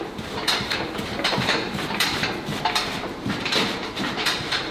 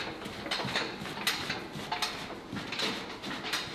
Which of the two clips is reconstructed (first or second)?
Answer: first